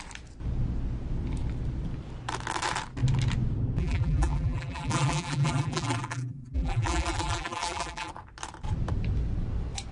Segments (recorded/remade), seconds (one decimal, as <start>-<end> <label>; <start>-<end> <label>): 0.0-3.8 recorded; 3.8-8.1 remade; 8.1-9.9 recorded